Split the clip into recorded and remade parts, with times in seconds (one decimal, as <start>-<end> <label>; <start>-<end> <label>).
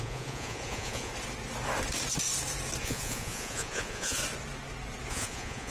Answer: 0.0-1.1 remade; 1.1-2.8 recorded; 2.8-4.2 remade; 4.2-5.1 recorded; 5.1-5.7 remade